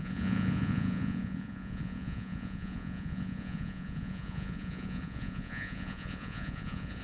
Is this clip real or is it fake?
fake